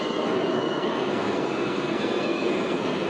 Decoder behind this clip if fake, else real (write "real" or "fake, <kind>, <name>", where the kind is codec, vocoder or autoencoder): fake, codec, SNAC